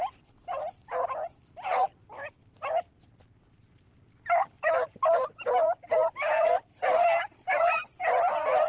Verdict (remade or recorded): remade